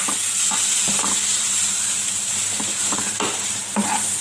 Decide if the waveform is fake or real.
fake